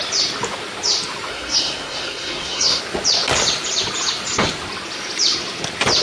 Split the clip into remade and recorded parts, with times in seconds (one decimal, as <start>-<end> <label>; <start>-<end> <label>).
0.0-1.3 recorded; 1.3-2.8 remade; 2.8-6.0 recorded

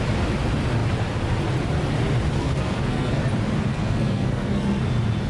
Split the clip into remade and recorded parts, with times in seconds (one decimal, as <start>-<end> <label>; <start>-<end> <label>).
0.0-2.4 recorded; 2.4-3.2 remade; 3.2-3.7 recorded; 3.7-4.8 remade; 4.8-5.3 recorded